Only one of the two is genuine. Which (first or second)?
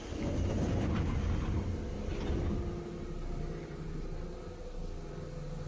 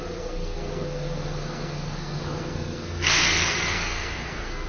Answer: first